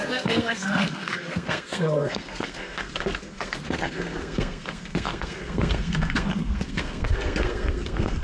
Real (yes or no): no